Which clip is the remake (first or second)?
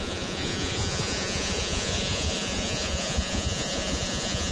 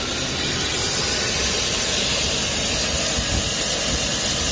first